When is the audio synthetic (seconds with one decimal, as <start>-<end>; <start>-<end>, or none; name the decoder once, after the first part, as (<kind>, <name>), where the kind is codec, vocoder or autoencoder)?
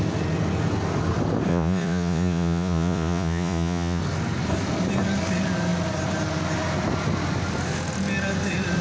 1.5-4.0 (vocoder, Vocos)